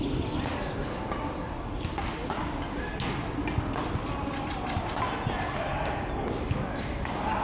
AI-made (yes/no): no